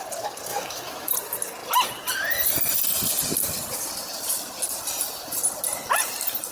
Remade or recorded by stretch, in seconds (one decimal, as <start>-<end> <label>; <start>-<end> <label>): 0.0-0.5 recorded; 0.5-1.1 remade; 1.1-6.5 recorded